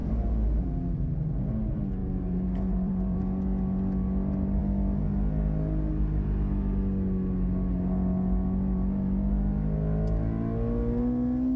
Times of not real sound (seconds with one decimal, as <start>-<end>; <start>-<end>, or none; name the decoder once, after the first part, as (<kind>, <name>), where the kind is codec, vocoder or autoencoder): 2.0-3.2 (vocoder, BigVGAN v2)